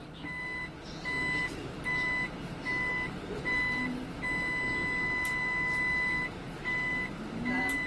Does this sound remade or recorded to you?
recorded